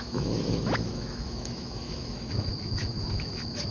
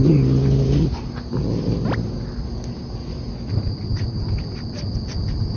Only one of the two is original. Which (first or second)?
second